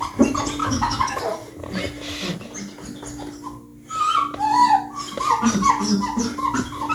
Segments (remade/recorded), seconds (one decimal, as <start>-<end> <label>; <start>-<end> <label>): 0.0-0.6 recorded; 0.6-1.2 remade; 1.2-6.9 recorded